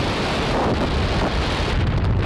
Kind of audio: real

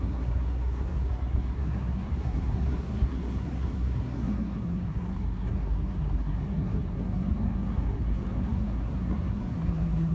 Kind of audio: fake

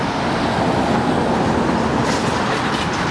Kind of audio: real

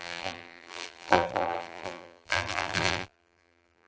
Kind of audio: fake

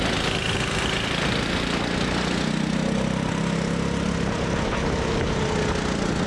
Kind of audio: real